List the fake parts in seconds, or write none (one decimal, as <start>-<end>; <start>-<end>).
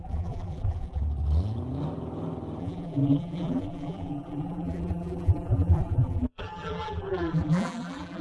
0.0-1.0; 2.6-8.2